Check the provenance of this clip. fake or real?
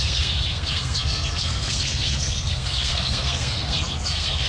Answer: fake